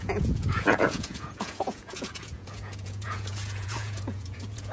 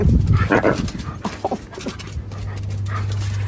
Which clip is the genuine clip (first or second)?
second